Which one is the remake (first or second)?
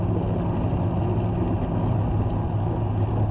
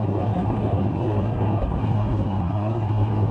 second